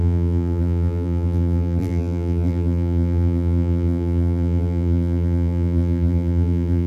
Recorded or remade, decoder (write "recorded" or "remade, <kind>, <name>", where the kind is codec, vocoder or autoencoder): remade, vocoder, BigVGAN v2